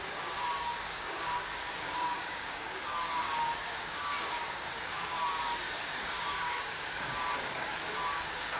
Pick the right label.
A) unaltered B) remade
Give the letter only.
B